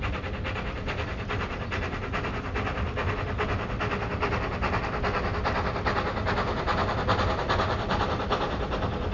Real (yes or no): yes